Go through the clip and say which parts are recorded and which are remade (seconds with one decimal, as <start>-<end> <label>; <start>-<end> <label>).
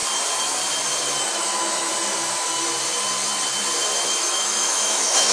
0.0-1.4 recorded; 1.4-1.9 remade; 1.9-4.3 recorded; 4.3-5.3 remade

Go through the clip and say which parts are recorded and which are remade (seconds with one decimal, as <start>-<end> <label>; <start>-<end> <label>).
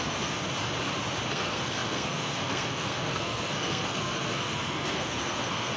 0.0-0.4 remade; 0.4-1.3 recorded; 1.3-5.8 remade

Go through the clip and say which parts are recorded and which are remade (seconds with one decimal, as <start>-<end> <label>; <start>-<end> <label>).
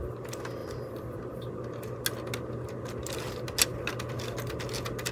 0.0-0.6 recorded; 0.6-1.2 remade; 1.2-5.1 recorded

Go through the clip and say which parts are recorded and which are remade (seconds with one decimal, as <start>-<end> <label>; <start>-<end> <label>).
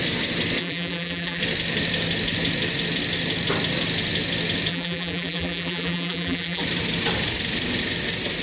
0.0-0.6 recorded; 0.6-1.4 remade; 1.4-4.7 recorded; 4.7-6.6 remade; 6.6-8.4 recorded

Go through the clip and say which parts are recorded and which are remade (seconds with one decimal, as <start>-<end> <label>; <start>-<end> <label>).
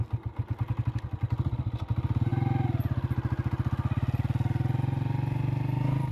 0.0-6.1 recorded